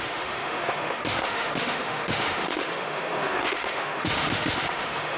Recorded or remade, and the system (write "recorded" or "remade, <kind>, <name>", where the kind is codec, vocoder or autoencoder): remade, autoencoder, DAC-VAE